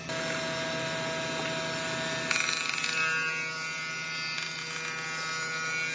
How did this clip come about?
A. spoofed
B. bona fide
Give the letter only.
B